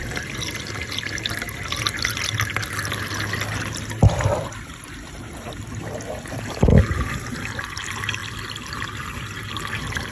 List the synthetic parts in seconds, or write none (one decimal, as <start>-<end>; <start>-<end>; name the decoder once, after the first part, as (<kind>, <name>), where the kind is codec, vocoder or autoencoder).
none